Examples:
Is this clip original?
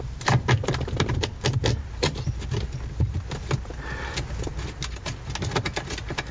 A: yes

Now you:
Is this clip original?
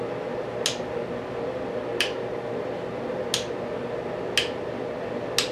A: yes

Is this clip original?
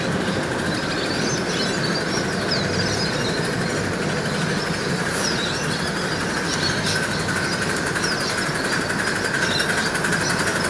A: yes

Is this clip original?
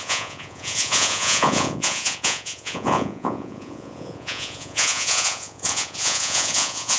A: no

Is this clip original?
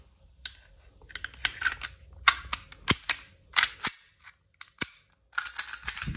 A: yes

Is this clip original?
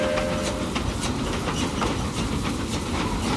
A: yes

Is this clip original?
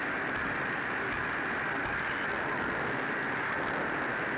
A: yes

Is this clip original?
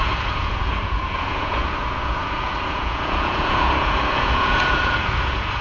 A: no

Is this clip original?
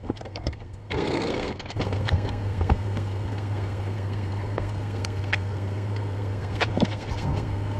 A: no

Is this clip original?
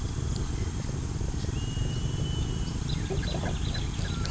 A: yes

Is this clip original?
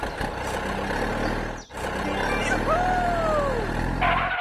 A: yes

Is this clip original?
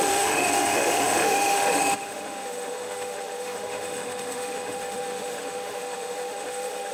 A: no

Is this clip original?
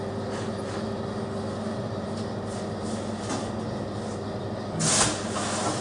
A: yes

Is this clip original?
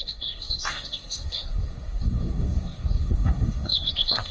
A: no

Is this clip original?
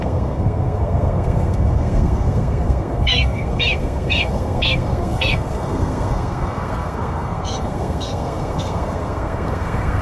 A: no